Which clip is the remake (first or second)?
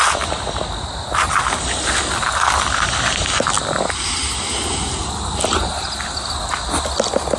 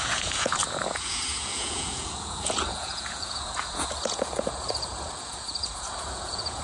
second